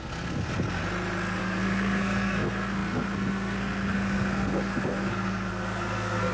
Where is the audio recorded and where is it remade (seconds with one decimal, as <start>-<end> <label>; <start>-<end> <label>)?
0.0-0.8 remade; 0.8-1.4 recorded; 1.4-6.3 remade